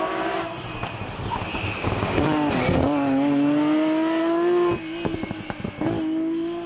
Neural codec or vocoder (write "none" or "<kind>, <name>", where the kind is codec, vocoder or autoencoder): none